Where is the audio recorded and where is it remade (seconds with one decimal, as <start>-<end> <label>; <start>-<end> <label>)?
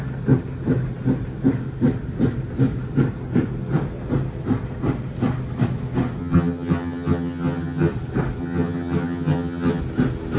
0.0-6.2 recorded; 6.2-7.9 remade; 7.9-8.4 recorded; 8.4-9.8 remade; 9.8-10.4 recorded